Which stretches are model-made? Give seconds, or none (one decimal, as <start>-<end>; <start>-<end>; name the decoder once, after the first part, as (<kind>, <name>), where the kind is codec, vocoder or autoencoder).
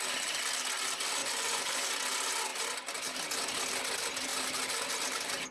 1.2-1.9 (vocoder, Vocos)